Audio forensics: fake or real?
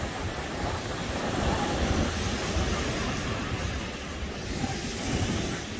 real